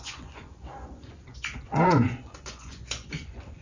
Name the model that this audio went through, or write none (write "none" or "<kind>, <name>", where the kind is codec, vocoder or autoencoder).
vocoder, Vocos